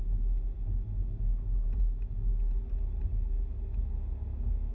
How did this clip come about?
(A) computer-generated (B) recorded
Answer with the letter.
B